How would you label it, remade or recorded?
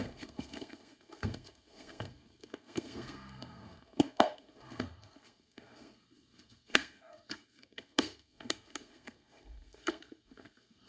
remade